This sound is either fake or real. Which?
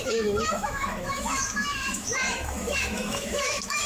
fake